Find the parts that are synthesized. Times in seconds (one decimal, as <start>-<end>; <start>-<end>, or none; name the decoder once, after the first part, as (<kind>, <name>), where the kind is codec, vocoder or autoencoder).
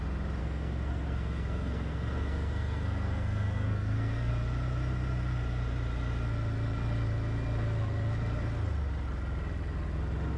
0.4-4.3 (codec, SNAC)